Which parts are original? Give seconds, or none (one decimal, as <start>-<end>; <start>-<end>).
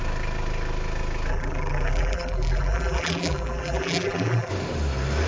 0.0-1.3; 4.5-5.3